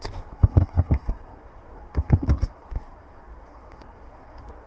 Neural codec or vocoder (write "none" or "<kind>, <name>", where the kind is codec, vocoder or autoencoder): codec, SNAC